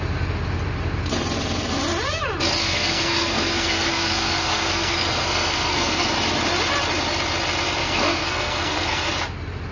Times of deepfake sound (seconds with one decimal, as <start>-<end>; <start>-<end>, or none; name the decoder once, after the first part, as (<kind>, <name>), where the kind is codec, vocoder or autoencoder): 2.6-6.1 (codec, SNAC); 7.8-9.1